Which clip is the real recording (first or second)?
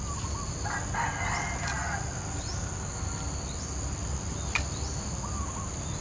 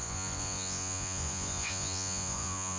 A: first